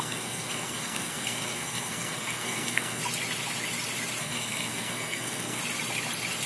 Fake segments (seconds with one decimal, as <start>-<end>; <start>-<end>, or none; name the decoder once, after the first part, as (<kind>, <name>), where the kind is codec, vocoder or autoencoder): 0.0-3.0 (codec, SNAC); 4.2-5.6